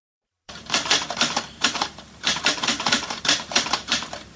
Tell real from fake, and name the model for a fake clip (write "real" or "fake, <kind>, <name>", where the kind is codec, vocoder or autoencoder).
fake, vocoder, BigVGAN v2